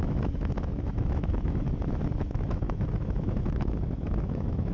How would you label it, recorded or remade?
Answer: remade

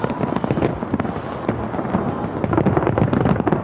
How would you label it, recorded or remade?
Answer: recorded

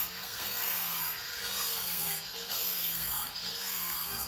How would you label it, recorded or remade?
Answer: remade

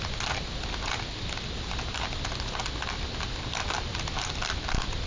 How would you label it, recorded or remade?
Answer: recorded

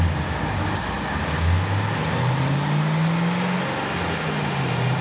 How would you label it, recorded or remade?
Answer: recorded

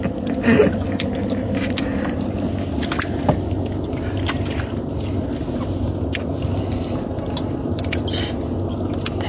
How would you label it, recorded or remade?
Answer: recorded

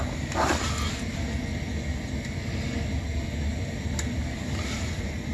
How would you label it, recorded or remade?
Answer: recorded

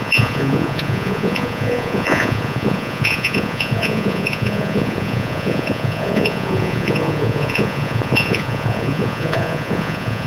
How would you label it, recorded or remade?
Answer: remade